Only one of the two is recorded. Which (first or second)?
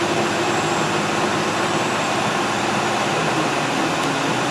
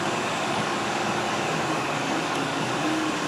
first